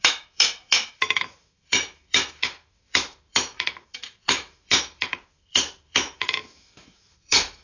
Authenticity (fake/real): fake